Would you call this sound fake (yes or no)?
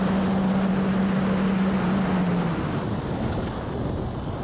no